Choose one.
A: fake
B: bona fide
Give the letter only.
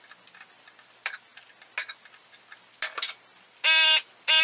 B